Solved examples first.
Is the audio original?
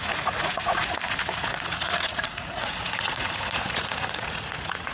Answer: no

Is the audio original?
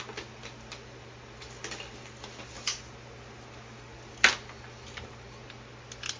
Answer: yes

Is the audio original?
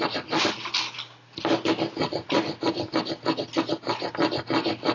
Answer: yes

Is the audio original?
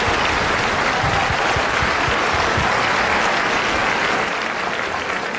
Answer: yes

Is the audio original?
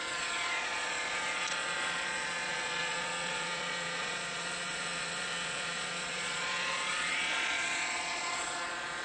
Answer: no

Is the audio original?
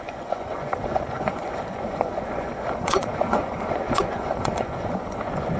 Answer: no